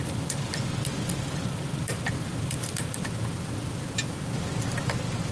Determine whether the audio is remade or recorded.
recorded